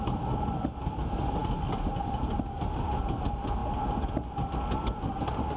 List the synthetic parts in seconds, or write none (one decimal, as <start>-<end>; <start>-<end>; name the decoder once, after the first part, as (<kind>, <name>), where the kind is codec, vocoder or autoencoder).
none